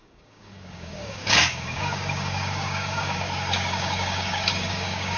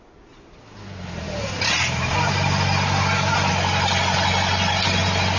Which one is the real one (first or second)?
second